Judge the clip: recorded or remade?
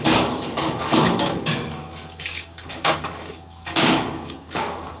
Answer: remade